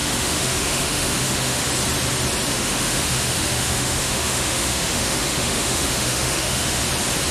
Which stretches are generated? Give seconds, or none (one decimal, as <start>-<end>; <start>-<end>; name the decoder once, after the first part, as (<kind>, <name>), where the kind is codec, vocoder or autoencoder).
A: 0.0-1.7 (autoencoder, DAC-VAE); 2.5-6.8